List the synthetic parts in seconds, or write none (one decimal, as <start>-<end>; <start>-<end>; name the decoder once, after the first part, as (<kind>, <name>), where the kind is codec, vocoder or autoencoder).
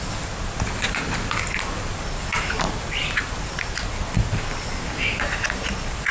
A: none